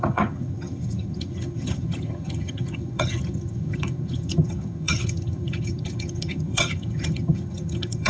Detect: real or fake fake